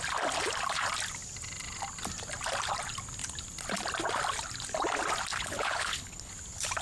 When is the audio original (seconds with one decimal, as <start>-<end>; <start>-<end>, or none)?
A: 0.0-5.3; 6.3-6.8